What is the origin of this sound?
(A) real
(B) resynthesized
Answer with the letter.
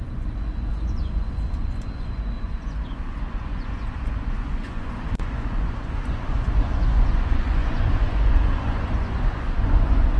B